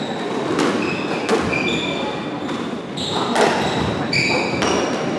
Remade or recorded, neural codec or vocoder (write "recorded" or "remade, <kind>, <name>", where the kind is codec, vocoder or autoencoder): recorded